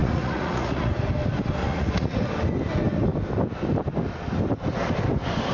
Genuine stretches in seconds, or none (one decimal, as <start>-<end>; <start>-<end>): 0.9-1.6; 2.2-5.5